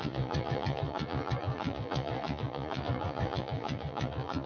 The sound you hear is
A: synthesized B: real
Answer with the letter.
A